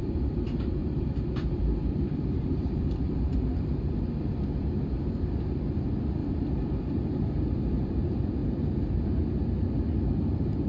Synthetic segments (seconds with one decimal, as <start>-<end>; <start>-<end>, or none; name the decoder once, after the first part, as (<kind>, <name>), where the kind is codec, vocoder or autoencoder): 0.8-3.9 (vocoder, BigVGAN v2); 6.2-7.9; 8.4-9.2